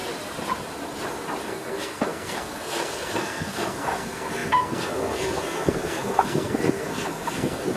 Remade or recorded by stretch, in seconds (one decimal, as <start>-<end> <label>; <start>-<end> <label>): 0.0-1.4 recorded; 1.4-7.8 remade